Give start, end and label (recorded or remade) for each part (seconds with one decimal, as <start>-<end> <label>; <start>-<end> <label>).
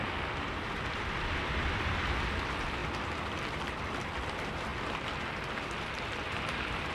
0.0-2.8 remade; 2.8-3.4 recorded; 3.4-4.7 remade; 4.7-5.8 recorded; 5.8-6.9 remade